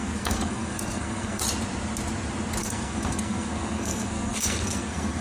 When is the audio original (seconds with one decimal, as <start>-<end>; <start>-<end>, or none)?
1.4-2.6